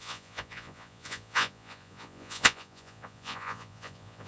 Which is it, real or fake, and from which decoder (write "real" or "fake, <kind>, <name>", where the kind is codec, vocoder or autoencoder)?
fake, vocoder, Vocos